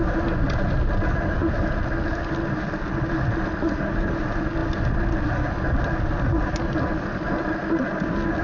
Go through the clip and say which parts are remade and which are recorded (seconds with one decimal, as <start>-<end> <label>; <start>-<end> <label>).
0.0-8.4 recorded